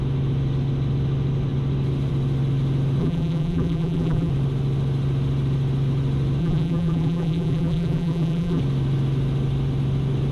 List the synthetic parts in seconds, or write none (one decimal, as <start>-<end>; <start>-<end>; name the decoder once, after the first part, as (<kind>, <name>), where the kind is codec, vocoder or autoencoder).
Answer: 3.0-4.3 (vocoder, BigVGAN v2); 6.4-8.6